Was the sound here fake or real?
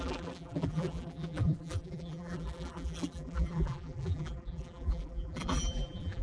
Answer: fake